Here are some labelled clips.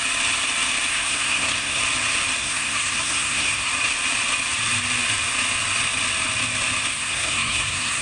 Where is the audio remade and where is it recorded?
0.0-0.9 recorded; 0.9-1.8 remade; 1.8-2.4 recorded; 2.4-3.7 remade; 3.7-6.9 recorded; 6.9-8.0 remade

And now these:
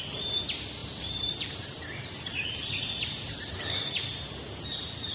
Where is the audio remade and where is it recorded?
0.0-0.8 recorded; 0.8-3.9 remade; 3.9-5.1 recorded

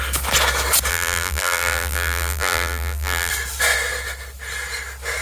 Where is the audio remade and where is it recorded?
0.0-0.9 recorded; 0.9-3.3 remade; 3.3-5.2 recorded

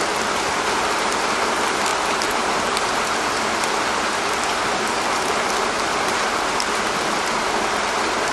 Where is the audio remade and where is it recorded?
0.0-1.9 recorded; 1.9-3.0 remade; 3.0-8.3 recorded

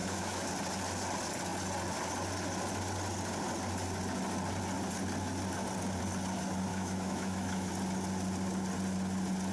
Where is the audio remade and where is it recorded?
0.0-0.5 remade; 0.5-6.7 recorded; 6.7-7.7 remade; 7.7-9.5 recorded

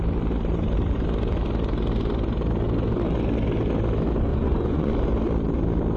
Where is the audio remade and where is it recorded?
0.0-4.3 recorded; 4.3-4.9 remade; 4.9-6.0 recorded